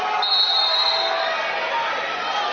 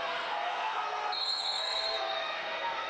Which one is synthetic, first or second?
second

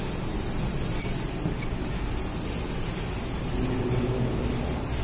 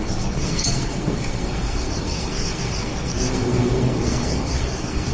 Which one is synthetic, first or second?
second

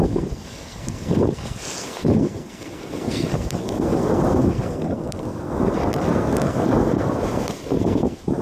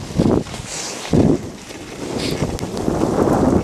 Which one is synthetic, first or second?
first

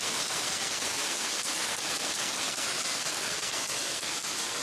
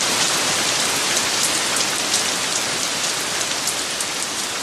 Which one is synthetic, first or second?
first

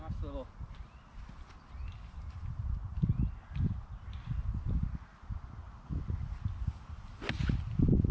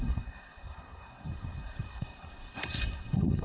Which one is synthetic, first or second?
second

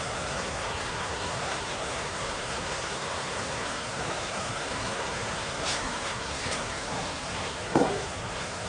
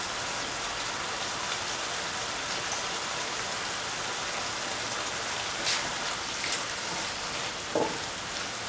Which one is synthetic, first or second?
first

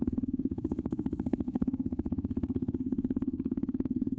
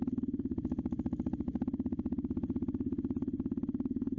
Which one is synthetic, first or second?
first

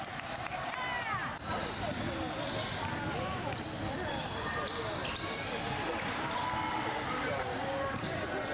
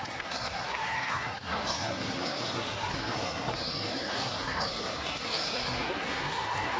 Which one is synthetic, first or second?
second